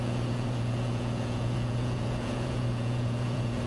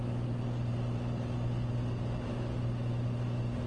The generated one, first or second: first